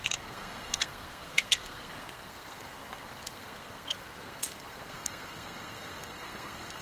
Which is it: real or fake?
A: fake